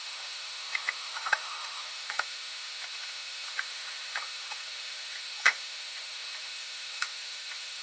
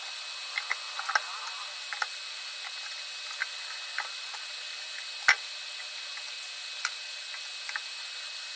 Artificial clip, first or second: first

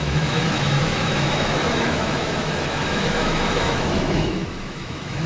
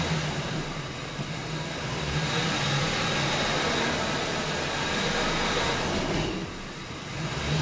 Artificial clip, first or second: first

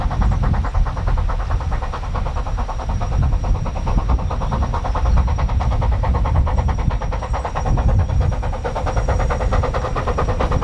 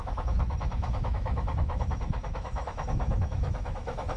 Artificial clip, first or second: second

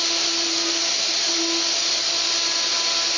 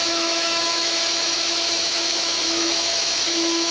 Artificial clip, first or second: second